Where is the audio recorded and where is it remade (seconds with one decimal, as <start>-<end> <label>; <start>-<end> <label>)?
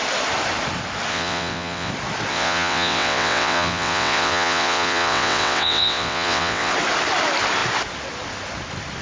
0.0-1.1 recorded; 1.1-1.9 remade; 1.9-2.3 recorded; 2.3-6.7 remade; 6.7-9.0 recorded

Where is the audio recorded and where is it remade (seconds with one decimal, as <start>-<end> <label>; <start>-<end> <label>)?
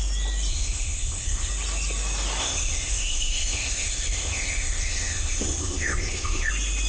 0.0-0.5 recorded; 0.5-1.5 remade; 1.5-2.4 recorded; 2.4-6.5 remade; 6.5-6.9 recorded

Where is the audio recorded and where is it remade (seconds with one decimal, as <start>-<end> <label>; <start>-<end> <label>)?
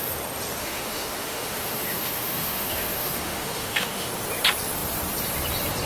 0.0-0.6 recorded; 0.6-4.1 remade; 4.1-5.8 recorded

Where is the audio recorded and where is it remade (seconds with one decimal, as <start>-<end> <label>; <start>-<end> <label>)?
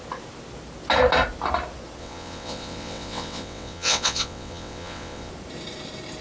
0.0-2.0 recorded; 2.0-5.3 remade; 5.3-6.2 recorded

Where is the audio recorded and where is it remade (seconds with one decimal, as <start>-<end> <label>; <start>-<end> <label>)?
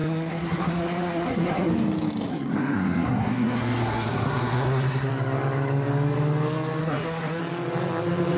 0.0-1.7 remade; 1.7-2.3 recorded; 2.3-5.1 remade; 5.1-6.8 recorded; 6.8-7.4 remade; 7.4-8.4 recorded